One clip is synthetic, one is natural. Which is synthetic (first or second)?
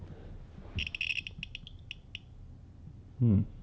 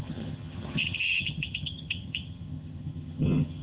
second